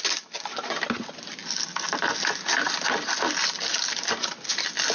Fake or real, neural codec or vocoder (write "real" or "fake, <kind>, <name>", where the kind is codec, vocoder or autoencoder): real